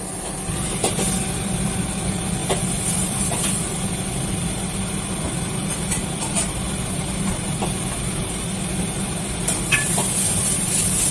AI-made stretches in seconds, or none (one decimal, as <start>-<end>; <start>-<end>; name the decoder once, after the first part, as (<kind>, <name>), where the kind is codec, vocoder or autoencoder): 2.4-3.2 (vocoder, BigVGAN v2)

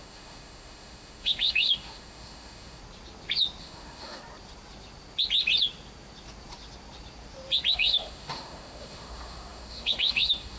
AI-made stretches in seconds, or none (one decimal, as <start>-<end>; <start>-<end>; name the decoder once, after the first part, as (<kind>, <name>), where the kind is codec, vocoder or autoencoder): 0.0-2.8 (autoencoder, DAC-VAE); 3.6-4.2; 7.7-10.6